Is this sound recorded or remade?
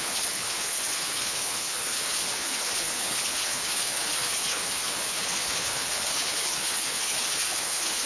remade